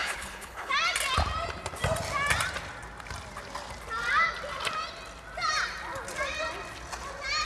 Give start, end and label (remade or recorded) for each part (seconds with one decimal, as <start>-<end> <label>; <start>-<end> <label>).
0.0-0.7 remade; 0.7-7.4 recorded